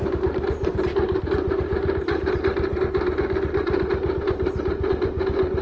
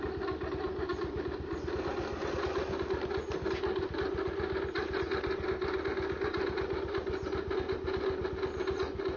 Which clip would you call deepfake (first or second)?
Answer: first